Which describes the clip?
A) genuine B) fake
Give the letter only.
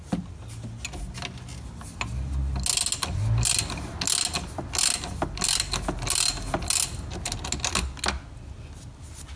A